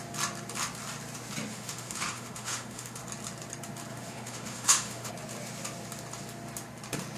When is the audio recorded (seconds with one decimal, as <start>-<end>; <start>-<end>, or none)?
0.0-1.5; 3.0-3.9; 5.1-7.2